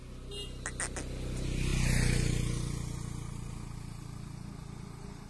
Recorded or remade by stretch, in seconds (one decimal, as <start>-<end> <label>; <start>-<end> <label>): 0.0-5.3 recorded